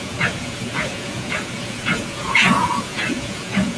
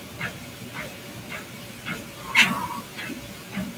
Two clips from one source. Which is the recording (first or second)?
second